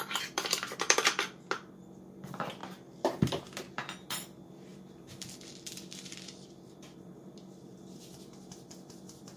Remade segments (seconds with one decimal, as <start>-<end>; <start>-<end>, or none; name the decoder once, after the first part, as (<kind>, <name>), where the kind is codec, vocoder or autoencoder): 0.0-2.6 (vocoder, BigVGAN v2); 3.7-9.4